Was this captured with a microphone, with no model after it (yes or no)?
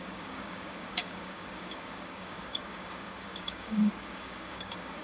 no